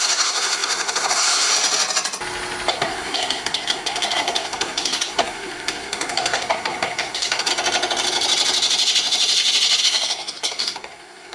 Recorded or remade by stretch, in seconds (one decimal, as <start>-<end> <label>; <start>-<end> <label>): 0.0-1.5 remade; 1.5-2.7 recorded; 2.7-7.5 remade; 7.5-9.8 recorded; 9.8-11.3 remade